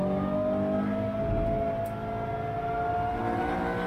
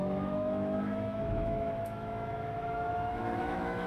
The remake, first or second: second